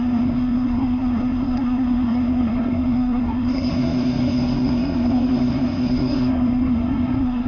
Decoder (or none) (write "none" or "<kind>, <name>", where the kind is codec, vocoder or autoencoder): codec, SNAC